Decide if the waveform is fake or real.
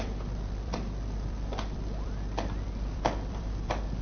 fake